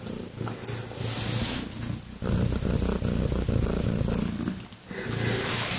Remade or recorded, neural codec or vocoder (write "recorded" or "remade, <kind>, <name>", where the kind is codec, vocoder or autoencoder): recorded